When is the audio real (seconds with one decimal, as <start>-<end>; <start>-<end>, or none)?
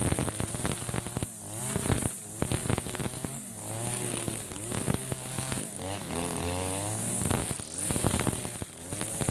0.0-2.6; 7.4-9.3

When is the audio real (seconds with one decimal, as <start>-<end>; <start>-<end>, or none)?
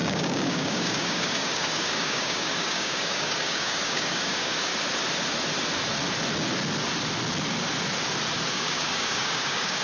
4.7-8.5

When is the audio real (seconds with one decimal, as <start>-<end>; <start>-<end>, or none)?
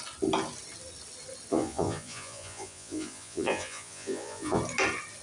0.0-1.5; 4.6-5.2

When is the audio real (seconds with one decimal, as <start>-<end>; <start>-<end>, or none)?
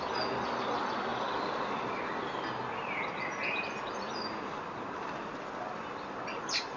0.0-6.8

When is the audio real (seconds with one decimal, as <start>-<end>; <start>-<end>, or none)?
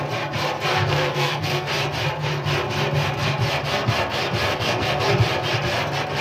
0.0-0.7; 1.7-4.5; 5.0-6.2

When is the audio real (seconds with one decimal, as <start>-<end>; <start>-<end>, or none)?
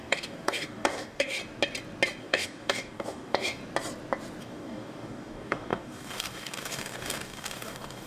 1.4-2.2; 3.6-4.4